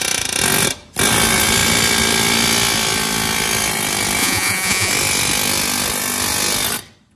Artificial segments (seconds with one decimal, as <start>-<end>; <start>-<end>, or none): 4.2-4.9